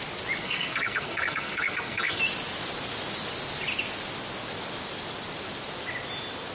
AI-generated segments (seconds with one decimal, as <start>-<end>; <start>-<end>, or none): 0.4-2.2